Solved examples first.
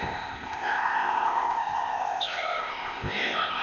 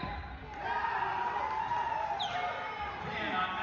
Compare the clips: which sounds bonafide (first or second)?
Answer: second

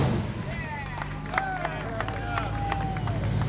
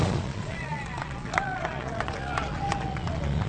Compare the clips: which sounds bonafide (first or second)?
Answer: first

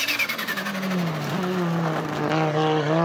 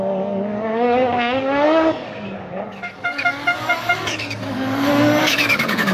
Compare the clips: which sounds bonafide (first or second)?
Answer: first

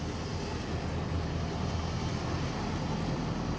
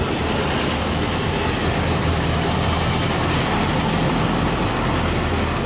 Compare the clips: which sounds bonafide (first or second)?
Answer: first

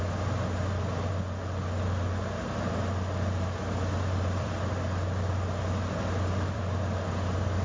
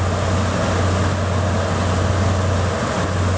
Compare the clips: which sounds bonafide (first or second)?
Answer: second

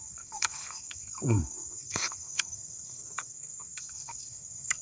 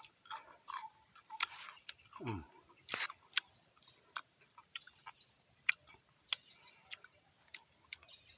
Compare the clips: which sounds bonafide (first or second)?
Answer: second